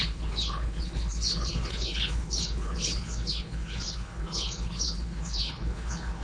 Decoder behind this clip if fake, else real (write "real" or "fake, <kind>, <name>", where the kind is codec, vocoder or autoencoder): fake, codec, HILCodec